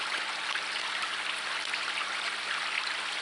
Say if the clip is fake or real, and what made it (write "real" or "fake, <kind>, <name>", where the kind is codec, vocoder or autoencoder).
real